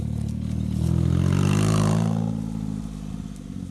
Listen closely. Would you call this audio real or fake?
real